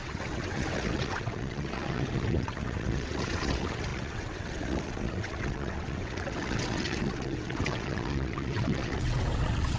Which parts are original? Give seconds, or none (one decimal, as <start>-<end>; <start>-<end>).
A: none